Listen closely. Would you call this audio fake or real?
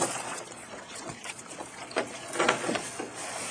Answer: fake